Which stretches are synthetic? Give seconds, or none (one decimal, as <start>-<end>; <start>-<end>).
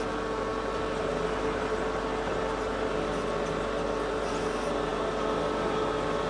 none